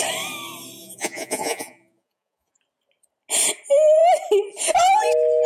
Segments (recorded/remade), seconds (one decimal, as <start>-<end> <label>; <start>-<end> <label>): 0.0-0.8 recorded; 0.8-2.6 remade; 2.6-5.5 recorded